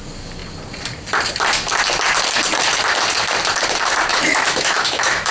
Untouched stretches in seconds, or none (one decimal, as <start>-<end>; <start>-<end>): 0.0-4.1

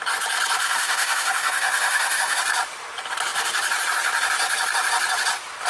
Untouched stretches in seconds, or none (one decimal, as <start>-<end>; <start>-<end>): 0.0-0.6; 2.4-5.7